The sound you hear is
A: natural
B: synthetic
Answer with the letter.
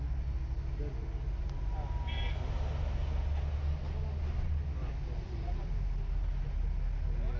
A